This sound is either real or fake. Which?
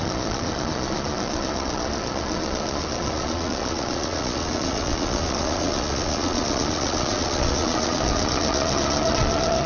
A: fake